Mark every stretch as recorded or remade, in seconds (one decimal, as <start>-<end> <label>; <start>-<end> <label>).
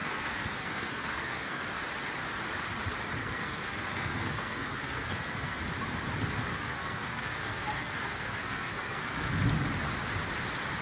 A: 0.0-1.8 remade; 1.8-3.2 recorded; 3.2-5.6 remade; 5.6-6.5 recorded; 6.5-9.3 remade; 9.3-10.8 recorded